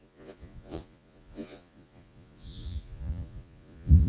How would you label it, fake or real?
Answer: fake